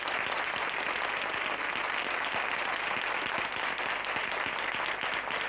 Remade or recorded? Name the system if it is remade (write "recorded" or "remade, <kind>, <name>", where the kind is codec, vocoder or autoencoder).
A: recorded